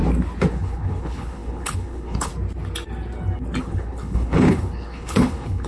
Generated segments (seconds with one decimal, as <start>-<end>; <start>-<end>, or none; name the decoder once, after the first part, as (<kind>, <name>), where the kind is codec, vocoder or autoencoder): 0.5-2.3 (codec, HILCodec); 3.6-5.7